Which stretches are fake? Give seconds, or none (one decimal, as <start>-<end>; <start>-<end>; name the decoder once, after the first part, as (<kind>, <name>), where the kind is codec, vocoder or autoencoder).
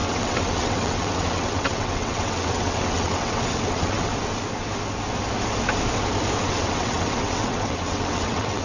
0.0-4.1 (vocoder, WaveNeXt); 6.4-8.6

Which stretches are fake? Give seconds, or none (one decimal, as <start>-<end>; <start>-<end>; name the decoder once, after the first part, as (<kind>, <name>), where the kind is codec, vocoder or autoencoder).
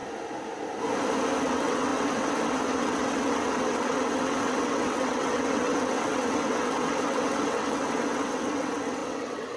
1.4-9.6 (vocoder, WaveNeXt)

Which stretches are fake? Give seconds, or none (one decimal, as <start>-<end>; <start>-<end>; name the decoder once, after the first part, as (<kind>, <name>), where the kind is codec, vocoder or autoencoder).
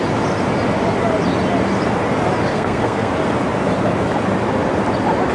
2.5-3.1 (codec, SNAC)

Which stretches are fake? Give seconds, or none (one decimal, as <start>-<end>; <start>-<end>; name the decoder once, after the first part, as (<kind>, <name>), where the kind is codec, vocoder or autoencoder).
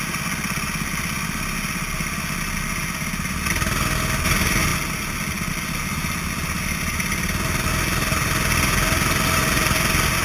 none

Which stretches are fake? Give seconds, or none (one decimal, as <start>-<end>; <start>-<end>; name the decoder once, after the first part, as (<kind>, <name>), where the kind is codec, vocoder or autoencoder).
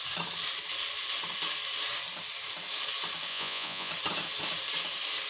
3.3-3.9 (vocoder, Vocos)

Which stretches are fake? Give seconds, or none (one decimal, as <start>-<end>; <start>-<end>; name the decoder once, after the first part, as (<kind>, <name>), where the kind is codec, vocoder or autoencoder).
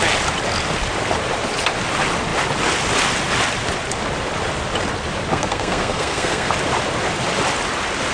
5.3-6.5 (codec, SNAC)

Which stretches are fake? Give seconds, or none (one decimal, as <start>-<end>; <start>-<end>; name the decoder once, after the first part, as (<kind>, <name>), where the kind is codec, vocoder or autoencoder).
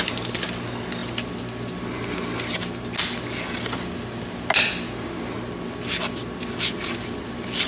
none